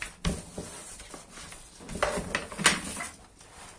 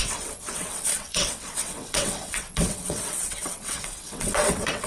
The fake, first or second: second